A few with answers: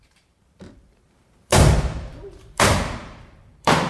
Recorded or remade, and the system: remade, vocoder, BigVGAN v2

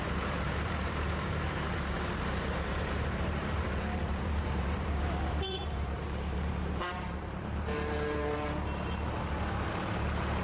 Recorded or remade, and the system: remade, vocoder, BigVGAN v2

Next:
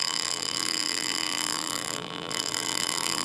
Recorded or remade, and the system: remade, vocoder, BigVGAN v2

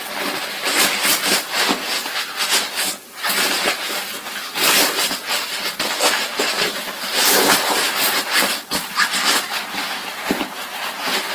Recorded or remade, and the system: recorded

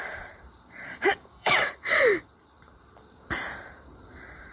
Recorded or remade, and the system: remade, vocoder, BigVGAN v2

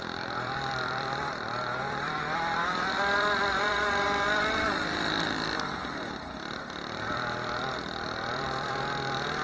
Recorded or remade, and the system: remade, vocoder, BigVGAN v2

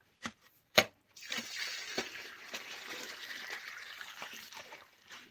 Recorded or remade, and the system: remade, vocoder, BigVGAN v2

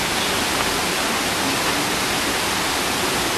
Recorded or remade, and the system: recorded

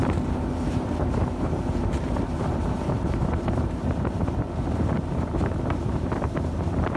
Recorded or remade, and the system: remade, vocoder, BigVGAN v2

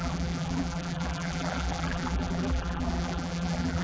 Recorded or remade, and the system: remade, vocoder, BigVGAN v2